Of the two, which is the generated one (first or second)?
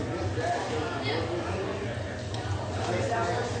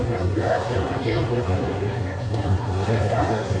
second